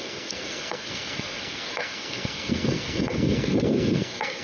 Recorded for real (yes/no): no